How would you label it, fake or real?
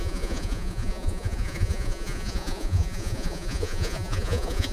fake